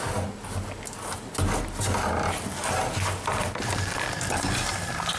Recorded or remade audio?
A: recorded